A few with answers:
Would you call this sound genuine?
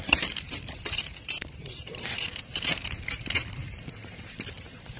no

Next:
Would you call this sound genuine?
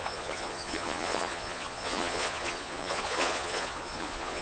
no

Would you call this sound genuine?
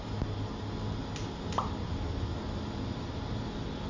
yes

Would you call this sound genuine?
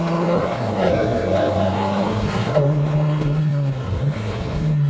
no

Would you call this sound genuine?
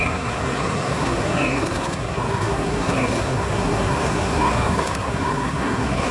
no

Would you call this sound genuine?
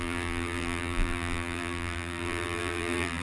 no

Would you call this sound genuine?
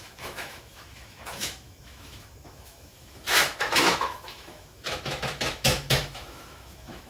no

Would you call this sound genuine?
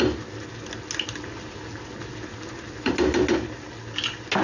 yes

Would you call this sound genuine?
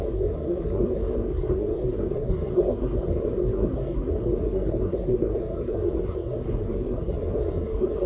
no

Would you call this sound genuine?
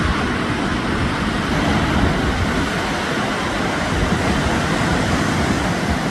yes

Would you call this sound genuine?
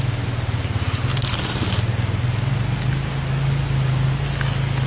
yes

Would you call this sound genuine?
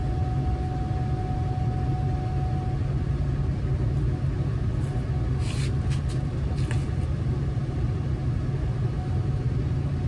yes